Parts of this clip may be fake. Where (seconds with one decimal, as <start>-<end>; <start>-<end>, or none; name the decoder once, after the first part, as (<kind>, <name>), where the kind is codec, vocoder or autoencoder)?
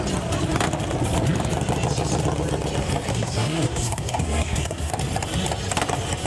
3.1-4.9 (codec, SNAC)